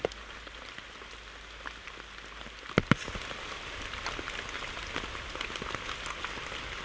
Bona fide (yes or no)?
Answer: yes